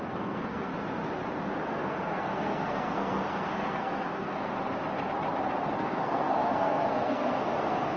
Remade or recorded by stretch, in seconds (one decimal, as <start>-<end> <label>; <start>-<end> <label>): 0.0-0.7 remade; 0.7-1.7 recorded; 1.7-4.5 remade; 4.5-5.7 recorded; 5.7-8.0 remade